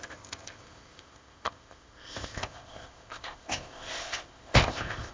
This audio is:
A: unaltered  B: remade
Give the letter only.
B